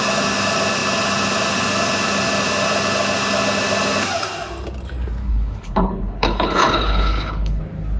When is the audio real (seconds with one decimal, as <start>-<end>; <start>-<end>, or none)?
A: 0.0-5.2; 7.6-8.0